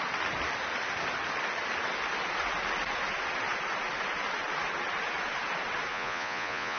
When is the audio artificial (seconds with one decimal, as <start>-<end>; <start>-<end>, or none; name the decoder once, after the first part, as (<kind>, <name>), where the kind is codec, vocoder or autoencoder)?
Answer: 5.9-6.8 (vocoder, Vocos)